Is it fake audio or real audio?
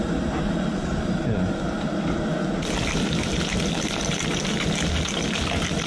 real